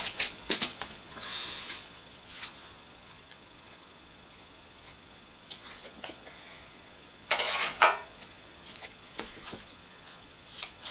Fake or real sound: fake